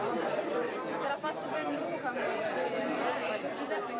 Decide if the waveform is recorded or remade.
recorded